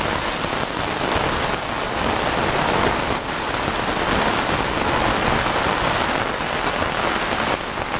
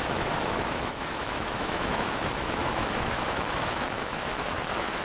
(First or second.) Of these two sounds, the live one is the first